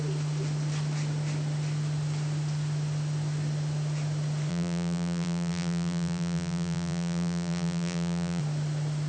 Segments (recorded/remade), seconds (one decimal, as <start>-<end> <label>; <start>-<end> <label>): 0.0-4.5 recorded; 4.5-8.4 remade; 8.4-9.1 recorded